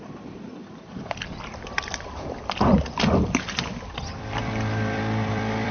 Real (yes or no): no